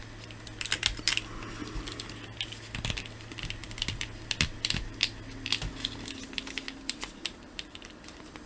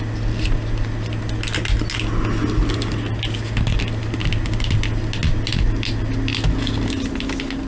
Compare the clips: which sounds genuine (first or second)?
second